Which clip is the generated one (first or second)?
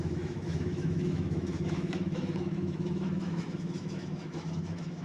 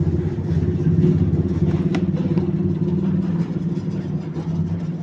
first